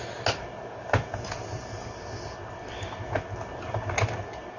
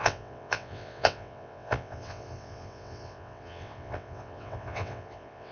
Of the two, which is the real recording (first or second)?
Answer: first